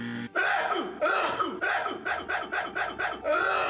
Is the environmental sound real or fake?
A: real